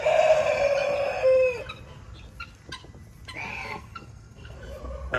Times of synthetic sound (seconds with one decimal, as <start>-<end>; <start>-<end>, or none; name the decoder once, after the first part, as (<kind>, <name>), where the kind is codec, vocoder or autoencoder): 3.5-4.6 (codec, SNAC)